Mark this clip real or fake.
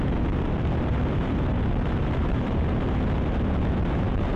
fake